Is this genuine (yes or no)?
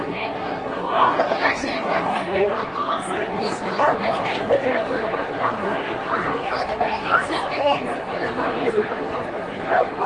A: no